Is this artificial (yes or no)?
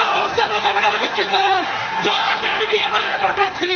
yes